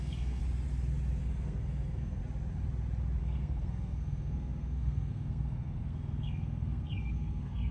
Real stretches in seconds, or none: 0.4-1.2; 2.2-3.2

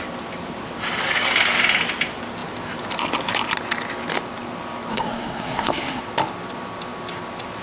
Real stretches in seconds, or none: 0.0-4.9; 6.0-7.6

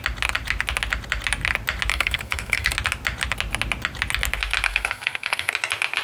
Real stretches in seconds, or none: 0.0-1.9; 2.7-4.7; 5.5-6.0

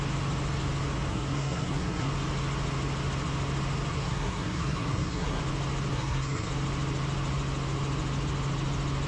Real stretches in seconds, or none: 0.0-1.1; 2.1-3.9; 5.4-5.9; 6.5-9.1